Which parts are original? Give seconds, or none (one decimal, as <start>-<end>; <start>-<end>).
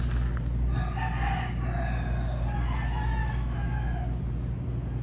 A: 0.0-3.2; 4.2-5.0